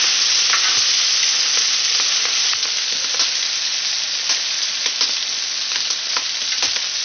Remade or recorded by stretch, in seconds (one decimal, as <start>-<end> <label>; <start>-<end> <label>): 0.0-7.0 recorded